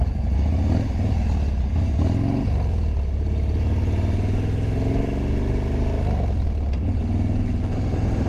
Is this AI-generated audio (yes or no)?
no